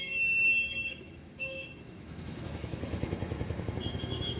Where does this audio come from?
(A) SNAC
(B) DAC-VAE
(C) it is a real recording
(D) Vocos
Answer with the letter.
B